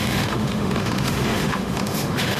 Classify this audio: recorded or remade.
remade